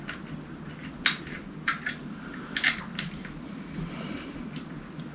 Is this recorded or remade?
recorded